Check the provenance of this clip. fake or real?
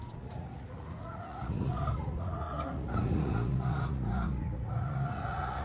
fake